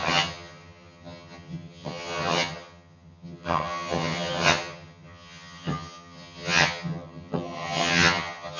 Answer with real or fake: fake